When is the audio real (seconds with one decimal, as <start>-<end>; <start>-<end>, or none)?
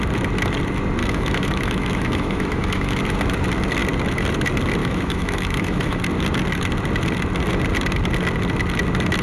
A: 0.0-1.0; 3.0-4.8; 6.0-9.2